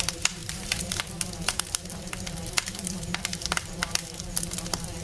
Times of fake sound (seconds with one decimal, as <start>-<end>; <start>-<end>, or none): 0.0-5.0